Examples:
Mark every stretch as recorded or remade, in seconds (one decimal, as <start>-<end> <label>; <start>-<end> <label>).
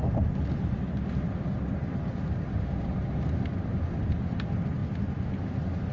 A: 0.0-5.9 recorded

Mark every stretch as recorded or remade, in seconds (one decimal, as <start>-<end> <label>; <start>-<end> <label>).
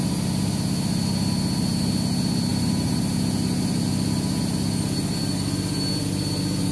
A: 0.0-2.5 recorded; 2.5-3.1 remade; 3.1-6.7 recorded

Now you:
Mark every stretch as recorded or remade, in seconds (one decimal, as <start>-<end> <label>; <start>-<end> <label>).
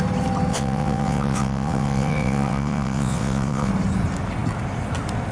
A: 0.0-0.5 recorded; 0.5-3.7 remade; 3.7-5.3 recorded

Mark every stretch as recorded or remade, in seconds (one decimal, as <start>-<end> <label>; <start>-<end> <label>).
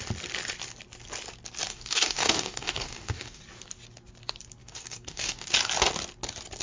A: 0.0-1.7 recorded; 1.7-3.4 remade; 3.4-4.6 recorded; 4.6-5.5 remade; 5.5-6.6 recorded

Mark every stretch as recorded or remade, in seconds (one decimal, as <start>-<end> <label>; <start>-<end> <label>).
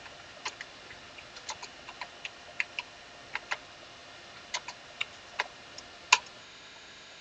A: 0.0-6.4 recorded; 6.4-7.2 remade